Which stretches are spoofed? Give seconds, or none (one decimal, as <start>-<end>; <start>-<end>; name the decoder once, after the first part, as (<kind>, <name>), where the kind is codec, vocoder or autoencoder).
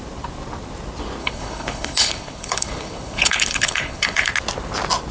1.2-4.3 (codec, HILCodec)